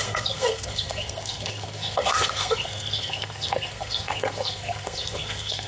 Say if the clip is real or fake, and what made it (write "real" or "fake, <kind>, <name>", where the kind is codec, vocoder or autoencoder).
fake, codec, SNAC